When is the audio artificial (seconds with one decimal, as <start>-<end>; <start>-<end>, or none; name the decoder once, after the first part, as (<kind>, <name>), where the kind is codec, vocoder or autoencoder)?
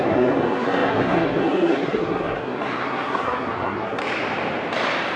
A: 0.0-4.0 (codec, SNAC)